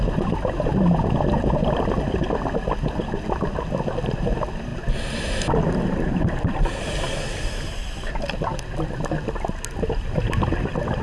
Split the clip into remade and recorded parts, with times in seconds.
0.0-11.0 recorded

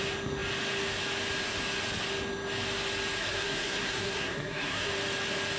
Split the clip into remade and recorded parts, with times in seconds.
0.0-3.2 recorded; 3.2-4.9 remade; 4.9-5.6 recorded

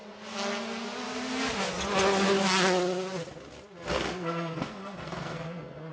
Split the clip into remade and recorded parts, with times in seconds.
0.0-3.9 recorded; 3.9-5.9 remade